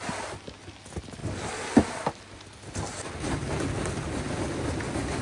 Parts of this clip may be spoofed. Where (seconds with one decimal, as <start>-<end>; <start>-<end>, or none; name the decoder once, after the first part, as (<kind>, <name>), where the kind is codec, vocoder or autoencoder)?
none